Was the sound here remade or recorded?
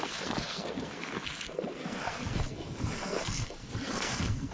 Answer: remade